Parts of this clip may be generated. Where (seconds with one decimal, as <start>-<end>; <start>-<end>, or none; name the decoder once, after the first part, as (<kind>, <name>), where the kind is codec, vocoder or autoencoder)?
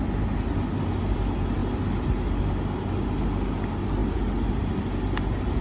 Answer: none